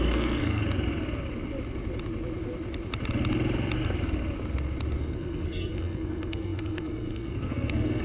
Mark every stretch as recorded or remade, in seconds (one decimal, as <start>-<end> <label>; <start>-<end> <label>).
0.0-0.6 remade; 0.6-5.0 recorded; 5.0-8.0 remade

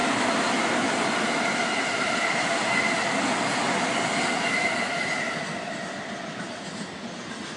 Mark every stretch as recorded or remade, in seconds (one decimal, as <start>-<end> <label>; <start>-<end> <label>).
0.0-7.6 recorded

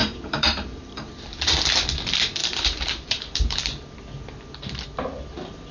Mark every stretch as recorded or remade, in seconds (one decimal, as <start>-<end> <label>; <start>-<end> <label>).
0.0-1.1 remade; 1.1-2.4 recorded; 2.4-3.7 remade; 3.7-5.7 recorded

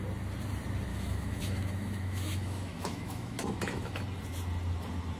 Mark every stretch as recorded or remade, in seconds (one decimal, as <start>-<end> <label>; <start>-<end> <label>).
0.0-0.9 recorded; 0.9-4.0 remade; 4.0-5.2 recorded

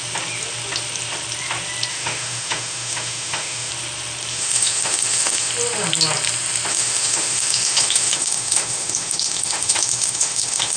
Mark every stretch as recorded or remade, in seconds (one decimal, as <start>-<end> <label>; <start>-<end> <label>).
0.0-1.9 recorded; 1.9-3.7 remade; 3.7-4.3 recorded; 4.3-5.5 remade; 5.5-6.7 recorded; 6.7-10.8 remade

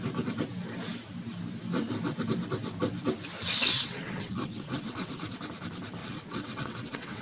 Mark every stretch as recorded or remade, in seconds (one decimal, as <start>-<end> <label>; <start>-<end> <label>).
0.0-3.6 recorded; 3.6-5.1 remade; 5.1-6.0 recorded; 6.0-7.2 remade

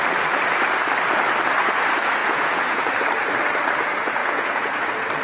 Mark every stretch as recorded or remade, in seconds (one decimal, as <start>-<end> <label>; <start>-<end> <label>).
0.0-2.2 recorded; 2.2-2.9 remade; 2.9-4.2 recorded; 4.2-4.8 remade; 4.8-5.2 recorded